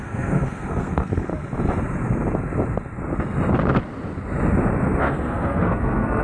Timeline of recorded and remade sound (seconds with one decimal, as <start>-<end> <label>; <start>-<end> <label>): 0.0-1.3 remade; 1.3-5.0 recorded; 5.0-6.2 remade